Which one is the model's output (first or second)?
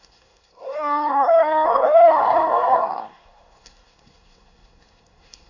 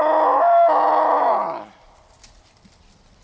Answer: first